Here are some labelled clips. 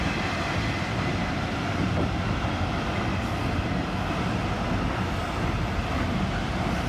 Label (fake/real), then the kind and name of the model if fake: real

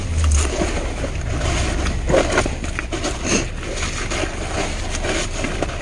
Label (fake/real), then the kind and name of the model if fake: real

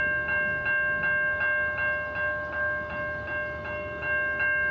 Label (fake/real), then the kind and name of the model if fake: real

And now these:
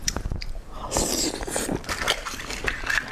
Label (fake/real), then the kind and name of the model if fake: fake, vocoder, BigVGAN v2